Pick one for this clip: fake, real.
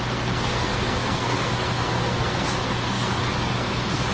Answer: fake